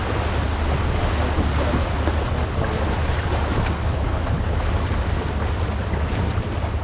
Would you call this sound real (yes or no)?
yes